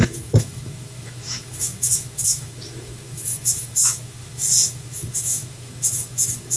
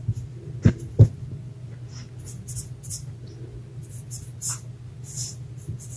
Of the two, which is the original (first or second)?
second